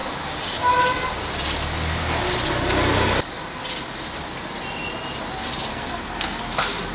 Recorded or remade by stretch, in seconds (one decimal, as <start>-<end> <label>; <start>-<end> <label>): 0.0-5.7 recorded; 5.7-6.4 remade; 6.4-6.9 recorded